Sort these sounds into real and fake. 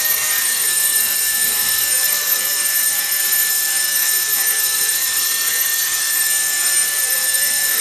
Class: fake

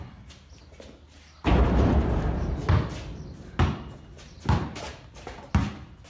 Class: real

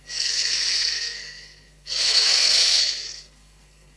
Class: fake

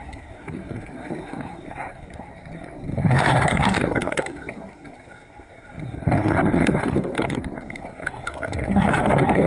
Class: fake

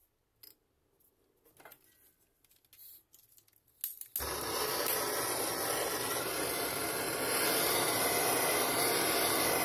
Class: real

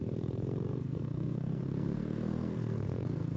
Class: fake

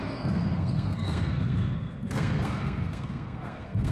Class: fake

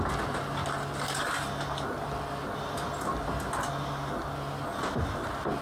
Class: real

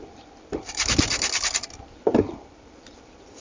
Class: real